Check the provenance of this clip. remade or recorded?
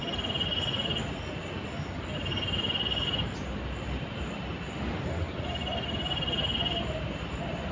recorded